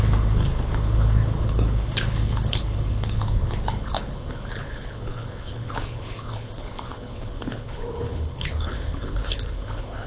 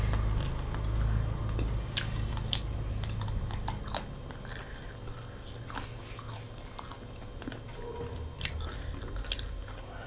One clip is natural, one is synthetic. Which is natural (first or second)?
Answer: second